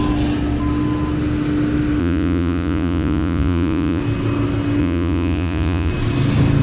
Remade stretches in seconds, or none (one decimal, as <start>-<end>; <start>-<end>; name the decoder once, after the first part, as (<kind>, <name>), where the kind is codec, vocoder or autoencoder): 2.0-4.0 (vocoder, Vocos); 4.8-5.9